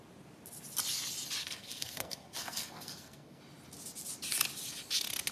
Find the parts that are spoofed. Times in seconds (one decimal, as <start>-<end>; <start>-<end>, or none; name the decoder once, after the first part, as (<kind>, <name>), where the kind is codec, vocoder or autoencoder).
1.4-3.4 (codec, SNAC)